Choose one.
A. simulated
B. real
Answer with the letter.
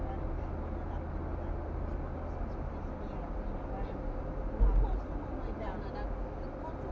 B